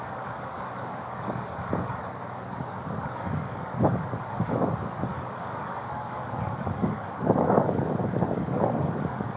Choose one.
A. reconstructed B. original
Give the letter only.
A